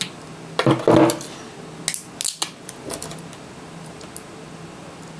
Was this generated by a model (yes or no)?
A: no